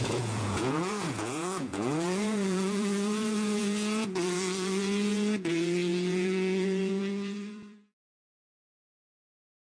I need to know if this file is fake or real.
fake